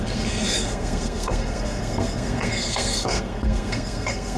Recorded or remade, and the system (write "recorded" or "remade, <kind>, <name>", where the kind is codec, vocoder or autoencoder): remade, codec, SNAC